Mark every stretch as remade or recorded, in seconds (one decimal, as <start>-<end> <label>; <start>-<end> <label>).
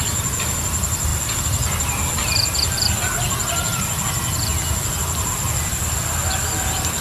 0.0-7.0 recorded